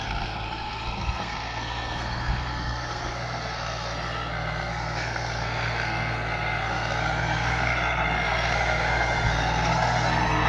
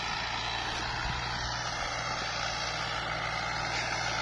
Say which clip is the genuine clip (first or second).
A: second